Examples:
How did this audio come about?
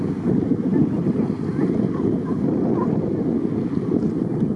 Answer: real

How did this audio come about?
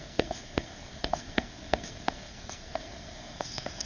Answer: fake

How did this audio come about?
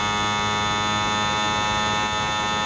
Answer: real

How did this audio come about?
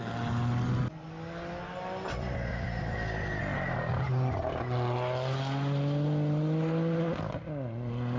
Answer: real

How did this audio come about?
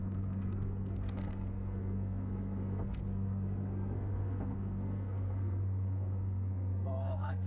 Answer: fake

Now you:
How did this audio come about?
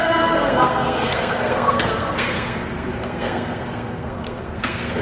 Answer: fake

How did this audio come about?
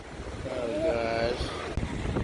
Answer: real